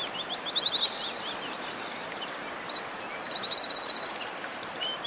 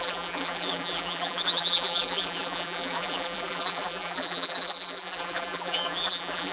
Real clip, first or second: first